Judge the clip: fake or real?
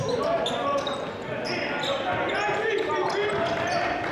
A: real